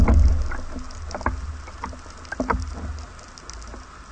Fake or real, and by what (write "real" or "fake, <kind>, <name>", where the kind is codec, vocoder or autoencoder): real